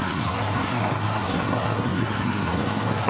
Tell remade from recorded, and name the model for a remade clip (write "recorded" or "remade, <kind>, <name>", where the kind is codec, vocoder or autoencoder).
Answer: remade, codec, SNAC